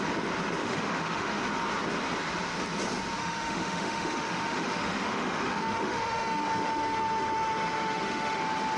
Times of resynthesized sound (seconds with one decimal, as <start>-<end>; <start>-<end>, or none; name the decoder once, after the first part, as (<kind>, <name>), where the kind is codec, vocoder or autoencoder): 0.6-1.4 (autoencoder, DAC-VAE); 3.2-8.4